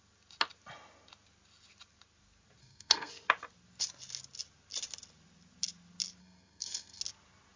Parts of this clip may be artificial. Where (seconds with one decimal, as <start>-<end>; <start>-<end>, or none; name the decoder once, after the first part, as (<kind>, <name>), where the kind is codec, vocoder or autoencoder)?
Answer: 2.6-3.1 (codec, SNAC); 6.2-7.0